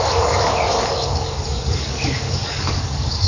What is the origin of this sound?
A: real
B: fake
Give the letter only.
B